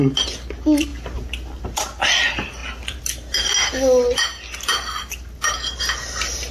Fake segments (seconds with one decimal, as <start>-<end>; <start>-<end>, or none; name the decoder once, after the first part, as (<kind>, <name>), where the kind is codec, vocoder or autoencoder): none